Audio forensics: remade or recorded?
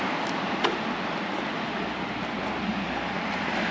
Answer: recorded